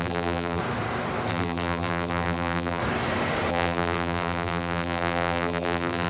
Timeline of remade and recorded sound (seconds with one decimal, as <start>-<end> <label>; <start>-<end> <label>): 0.0-0.6 remade; 0.6-1.3 recorded; 1.3-2.8 remade; 2.8-3.5 recorded; 3.5-6.1 remade